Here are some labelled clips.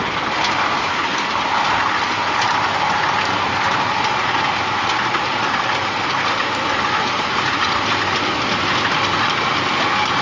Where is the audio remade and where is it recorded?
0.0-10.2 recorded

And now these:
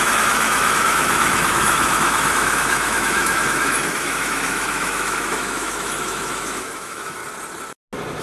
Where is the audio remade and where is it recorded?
0.0-7.2 remade; 7.2-8.2 recorded

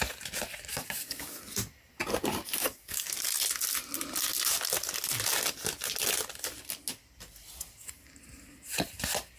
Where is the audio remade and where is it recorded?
0.0-0.7 recorded; 0.7-1.4 remade; 1.4-2.6 recorded; 2.6-3.1 remade; 3.1-9.4 recorded

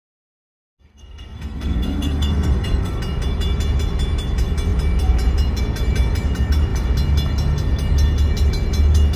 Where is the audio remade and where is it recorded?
0.0-0.9 recorded; 0.9-3.0 remade; 3.0-9.2 recorded